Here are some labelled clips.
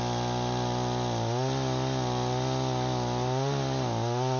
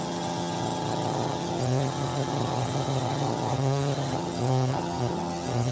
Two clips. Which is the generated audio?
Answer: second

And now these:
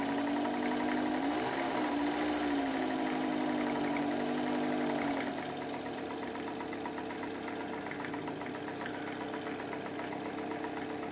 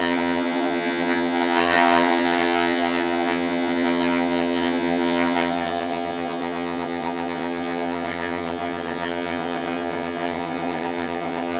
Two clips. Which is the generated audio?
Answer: second